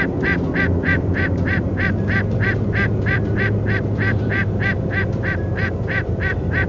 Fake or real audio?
fake